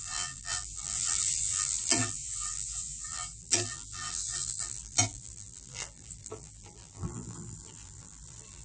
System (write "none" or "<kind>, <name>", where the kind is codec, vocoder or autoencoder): vocoder, BigVGAN v2